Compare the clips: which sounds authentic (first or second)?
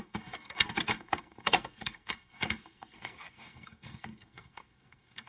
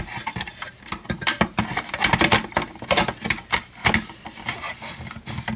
second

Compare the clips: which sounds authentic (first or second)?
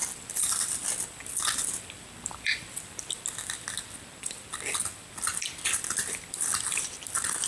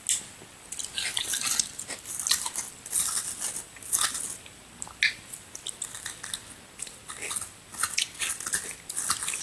second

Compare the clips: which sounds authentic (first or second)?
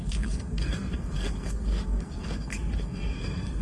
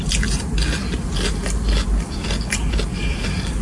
second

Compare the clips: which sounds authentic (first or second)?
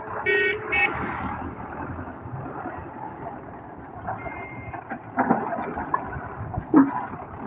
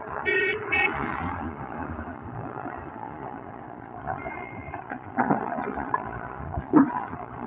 first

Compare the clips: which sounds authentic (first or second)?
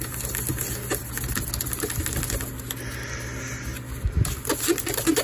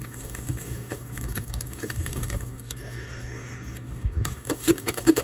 first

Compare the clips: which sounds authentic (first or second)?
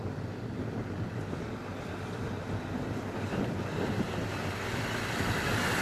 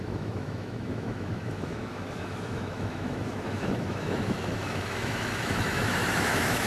first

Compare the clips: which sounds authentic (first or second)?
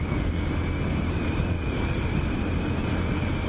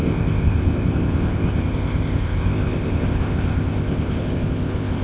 first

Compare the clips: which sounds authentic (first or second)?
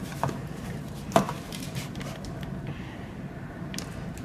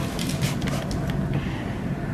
second